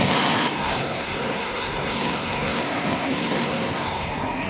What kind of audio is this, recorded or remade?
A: remade